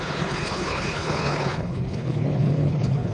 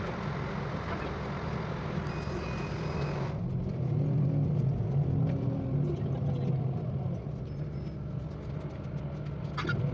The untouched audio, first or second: second